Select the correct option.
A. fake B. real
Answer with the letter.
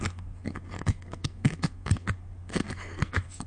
A